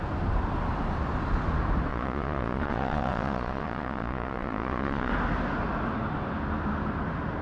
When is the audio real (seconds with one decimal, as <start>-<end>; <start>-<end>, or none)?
0.0-1.9; 5.1-7.4